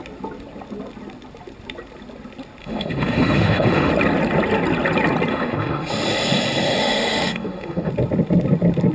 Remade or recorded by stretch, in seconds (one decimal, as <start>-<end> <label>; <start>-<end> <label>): 0.0-2.6 recorded; 2.6-3.9 remade; 3.9-5.3 recorded; 5.3-5.9 remade; 5.9-6.8 recorded; 6.8-7.9 remade; 7.9-8.9 recorded